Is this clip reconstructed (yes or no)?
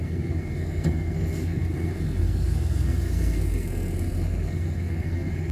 yes